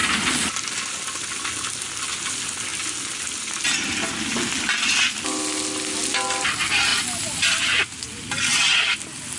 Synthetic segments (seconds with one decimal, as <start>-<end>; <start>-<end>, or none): none